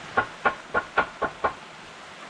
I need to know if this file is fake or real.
real